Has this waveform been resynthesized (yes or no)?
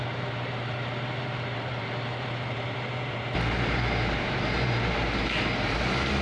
yes